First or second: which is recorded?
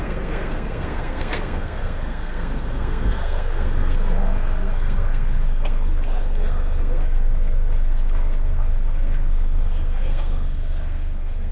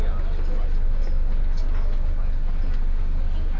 second